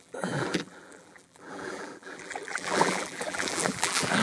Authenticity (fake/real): fake